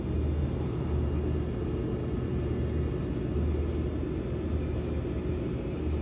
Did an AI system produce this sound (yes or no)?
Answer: no